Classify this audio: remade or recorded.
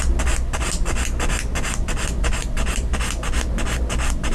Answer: recorded